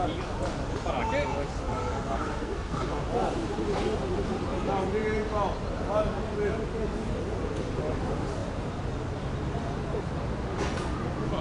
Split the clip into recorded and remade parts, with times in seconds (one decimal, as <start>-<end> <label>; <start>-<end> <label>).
0.0-1.8 recorded; 1.8-2.9 remade; 2.9-11.4 recorded